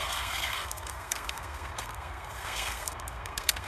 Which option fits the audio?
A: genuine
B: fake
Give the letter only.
B